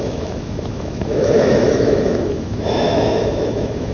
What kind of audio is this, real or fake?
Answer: fake